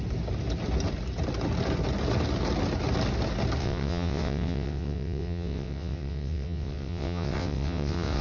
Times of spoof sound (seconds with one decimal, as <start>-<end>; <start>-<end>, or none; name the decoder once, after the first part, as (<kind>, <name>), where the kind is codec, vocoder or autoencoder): 3.6-8.2 (vocoder, WaveNeXt)